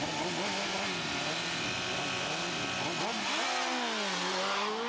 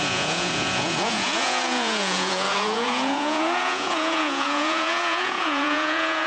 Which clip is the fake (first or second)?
second